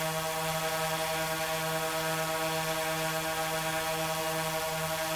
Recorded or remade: recorded